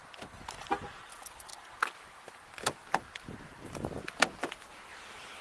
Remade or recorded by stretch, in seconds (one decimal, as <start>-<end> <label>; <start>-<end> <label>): 0.0-5.4 recorded

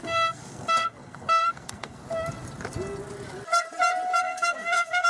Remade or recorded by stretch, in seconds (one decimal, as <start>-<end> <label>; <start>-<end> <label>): 0.0-2.0 remade; 2.0-4.2 recorded; 4.2-5.1 remade

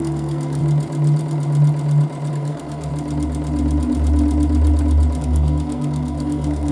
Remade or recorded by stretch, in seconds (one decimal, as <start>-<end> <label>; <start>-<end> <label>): 0.0-0.6 remade; 0.6-2.3 recorded; 2.3-2.9 remade; 2.9-5.2 recorded; 5.2-6.7 remade